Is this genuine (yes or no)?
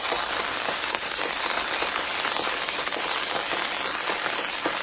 yes